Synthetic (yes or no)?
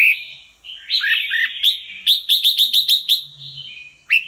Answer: no